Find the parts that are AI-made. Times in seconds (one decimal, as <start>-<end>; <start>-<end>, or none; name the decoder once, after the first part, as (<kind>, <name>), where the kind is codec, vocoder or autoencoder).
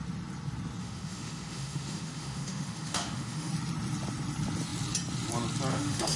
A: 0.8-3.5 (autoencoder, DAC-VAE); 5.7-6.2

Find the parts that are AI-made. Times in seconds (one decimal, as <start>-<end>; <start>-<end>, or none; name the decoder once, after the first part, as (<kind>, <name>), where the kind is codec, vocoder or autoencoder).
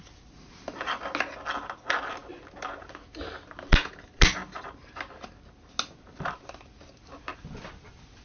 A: none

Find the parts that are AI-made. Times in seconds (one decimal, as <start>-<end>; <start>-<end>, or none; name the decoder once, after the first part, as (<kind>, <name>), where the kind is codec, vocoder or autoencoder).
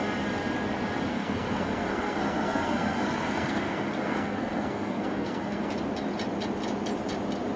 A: 1.1-5.7 (codec, SNAC)